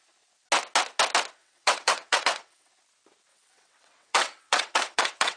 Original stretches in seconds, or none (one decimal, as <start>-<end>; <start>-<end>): 0.0-1.4; 2.7-3.3